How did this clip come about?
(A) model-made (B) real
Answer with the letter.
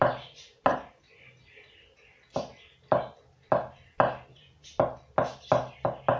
B